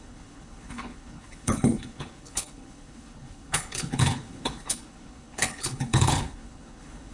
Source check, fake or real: fake